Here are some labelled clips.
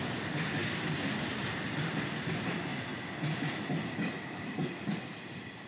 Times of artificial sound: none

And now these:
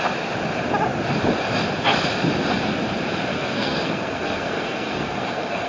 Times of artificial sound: 3.3-5.7 (codec, SNAC)

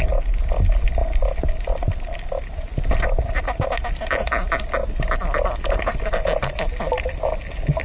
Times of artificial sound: none

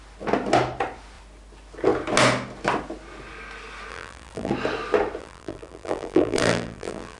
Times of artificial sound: 3.9-4.5 (vocoder, BigVGAN v2); 5.2-7.2

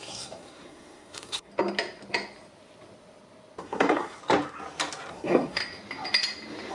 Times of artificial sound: 0.0-1.5 (codec, SNAC); 3.6-4.2; 5.1-5.6